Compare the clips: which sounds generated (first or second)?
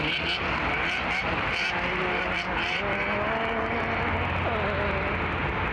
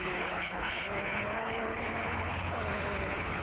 second